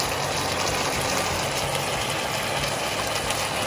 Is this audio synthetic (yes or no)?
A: no